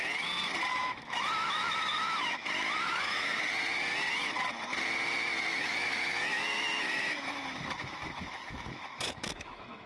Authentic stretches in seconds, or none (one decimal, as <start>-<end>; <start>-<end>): 0.0-0.7; 3.4-5.5